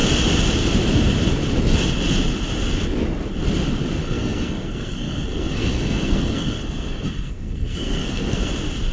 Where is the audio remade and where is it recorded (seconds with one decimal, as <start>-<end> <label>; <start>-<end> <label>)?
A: 0.0-4.0 recorded; 4.0-8.5 remade; 8.5-8.9 recorded